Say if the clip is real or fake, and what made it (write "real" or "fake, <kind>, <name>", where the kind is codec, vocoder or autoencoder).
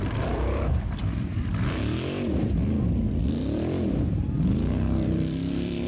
fake, vocoder, BigVGAN v2